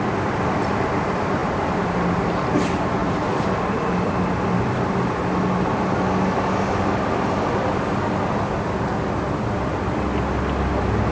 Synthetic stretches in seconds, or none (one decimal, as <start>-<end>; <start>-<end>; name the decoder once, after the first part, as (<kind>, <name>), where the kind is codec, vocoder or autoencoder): 3.0-3.8 (vocoder, BigVGAN v2)